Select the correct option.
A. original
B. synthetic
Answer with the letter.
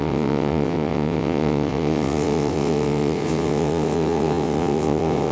B